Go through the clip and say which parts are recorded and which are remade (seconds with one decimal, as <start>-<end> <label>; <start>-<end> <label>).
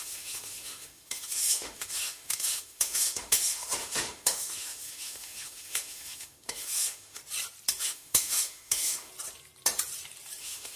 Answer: 0.0-7.2 remade; 7.2-7.8 recorded; 7.8-9.1 remade; 9.1-10.4 recorded; 10.4-10.8 remade